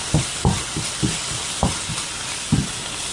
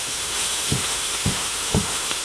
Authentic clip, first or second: first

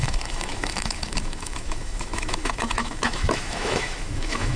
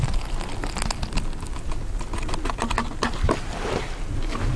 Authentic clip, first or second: second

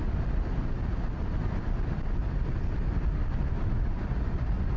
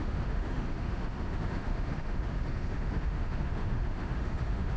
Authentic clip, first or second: first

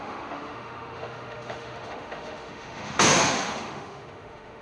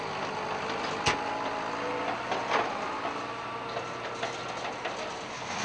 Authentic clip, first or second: second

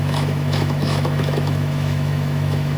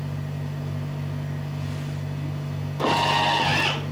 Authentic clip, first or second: second